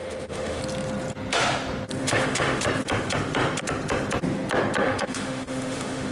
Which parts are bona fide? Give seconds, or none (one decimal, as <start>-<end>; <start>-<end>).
0.6-2.0; 2.6-4.8